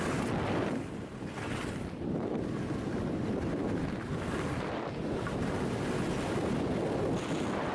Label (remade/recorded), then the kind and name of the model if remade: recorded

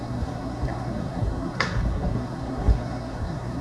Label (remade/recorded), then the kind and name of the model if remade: remade, codec, SNAC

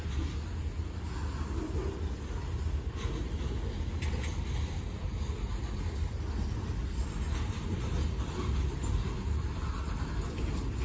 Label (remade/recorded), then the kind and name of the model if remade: recorded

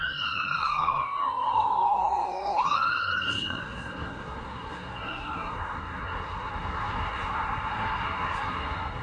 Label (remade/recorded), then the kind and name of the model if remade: remade, codec, SNAC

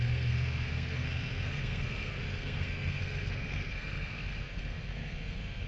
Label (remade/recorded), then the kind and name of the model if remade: remade, codec, SNAC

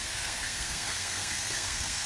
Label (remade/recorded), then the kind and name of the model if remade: remade, codec, SNAC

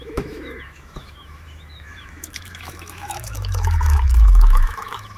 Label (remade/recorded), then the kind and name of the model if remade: remade, autoencoder, DAC-VAE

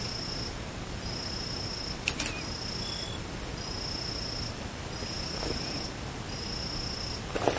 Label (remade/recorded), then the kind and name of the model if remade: recorded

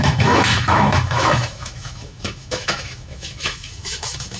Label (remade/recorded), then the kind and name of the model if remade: remade, autoencoder, DAC-VAE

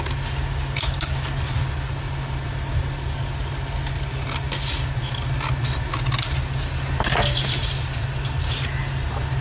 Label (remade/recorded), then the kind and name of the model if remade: recorded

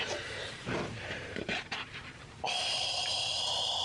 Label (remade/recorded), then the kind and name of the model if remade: remade, vocoder, BigVGAN v2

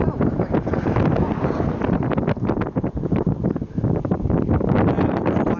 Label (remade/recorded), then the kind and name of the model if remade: recorded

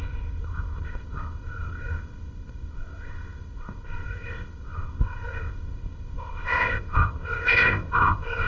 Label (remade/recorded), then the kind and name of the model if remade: remade, codec, ZipCodec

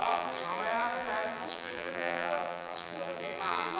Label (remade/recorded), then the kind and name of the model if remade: remade, vocoder, BigVGAN v2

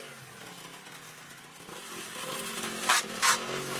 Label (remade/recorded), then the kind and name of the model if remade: recorded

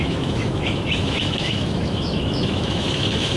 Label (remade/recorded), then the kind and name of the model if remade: remade, autoencoder, DAC-VAE